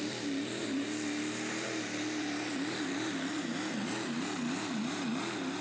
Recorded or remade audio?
remade